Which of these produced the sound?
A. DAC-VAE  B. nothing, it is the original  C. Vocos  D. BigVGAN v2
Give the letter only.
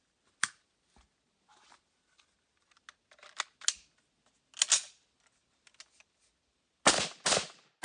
B